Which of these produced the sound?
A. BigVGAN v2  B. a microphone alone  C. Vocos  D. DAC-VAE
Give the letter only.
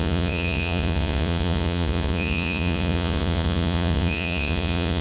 C